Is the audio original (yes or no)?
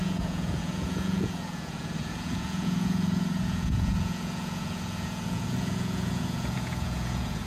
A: no